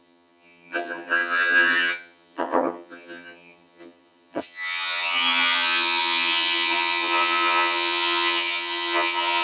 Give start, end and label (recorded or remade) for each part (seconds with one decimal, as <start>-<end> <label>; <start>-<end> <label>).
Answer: 0.0-9.4 remade